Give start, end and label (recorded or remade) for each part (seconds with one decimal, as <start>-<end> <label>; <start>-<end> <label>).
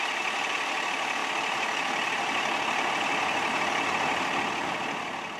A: 0.0-5.4 recorded